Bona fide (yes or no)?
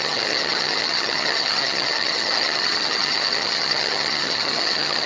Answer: no